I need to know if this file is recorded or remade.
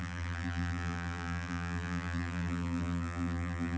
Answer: remade